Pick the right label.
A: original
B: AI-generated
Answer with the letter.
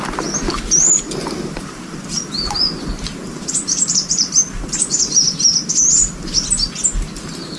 A